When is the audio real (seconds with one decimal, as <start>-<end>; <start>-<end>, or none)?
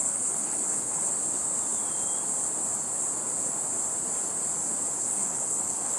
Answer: 1.1-5.0